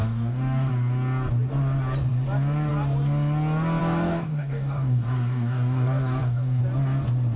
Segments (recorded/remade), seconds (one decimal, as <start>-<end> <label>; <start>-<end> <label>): 0.0-0.7 remade; 0.7-3.8 recorded; 3.8-6.6 remade; 6.6-7.4 recorded